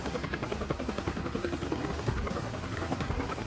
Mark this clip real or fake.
fake